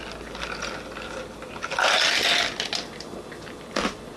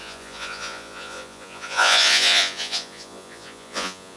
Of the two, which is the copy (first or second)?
second